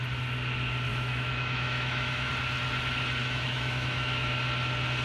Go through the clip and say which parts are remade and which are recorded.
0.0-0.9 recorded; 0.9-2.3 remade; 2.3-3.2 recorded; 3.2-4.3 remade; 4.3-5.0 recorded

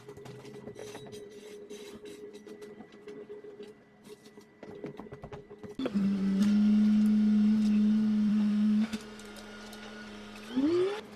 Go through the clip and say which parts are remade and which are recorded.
0.0-8.3 recorded; 8.3-9.0 remade; 9.0-11.2 recorded

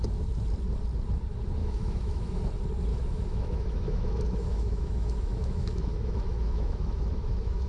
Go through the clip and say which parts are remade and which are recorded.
0.0-1.6 recorded; 1.6-2.4 remade; 2.4-2.9 recorded; 2.9-7.7 remade

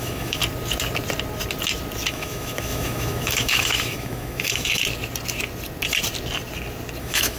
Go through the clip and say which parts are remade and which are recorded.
0.0-0.4 remade; 0.4-2.1 recorded; 2.1-4.8 remade; 4.8-7.0 recorded; 7.0-7.4 remade

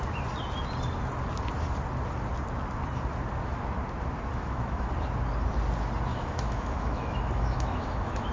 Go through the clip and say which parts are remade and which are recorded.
0.0-4.3 recorded; 4.3-4.9 remade; 4.9-6.1 recorded; 6.1-8.3 remade

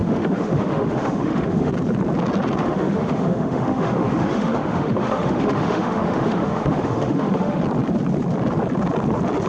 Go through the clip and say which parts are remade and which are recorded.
0.0-1.7 remade; 1.7-2.6 recorded; 2.6-7.6 remade; 7.6-9.5 recorded

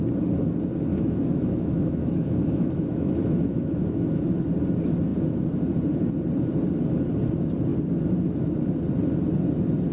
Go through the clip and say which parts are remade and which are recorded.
0.0-0.9 recorded; 0.9-4.2 remade; 4.2-9.9 recorded

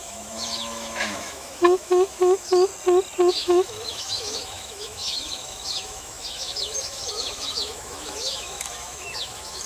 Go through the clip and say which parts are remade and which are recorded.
0.0-2.7 remade; 2.7-3.3 recorded; 3.3-9.7 remade